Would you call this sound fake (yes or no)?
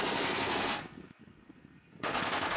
yes